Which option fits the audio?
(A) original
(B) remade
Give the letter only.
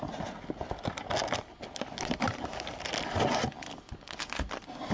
A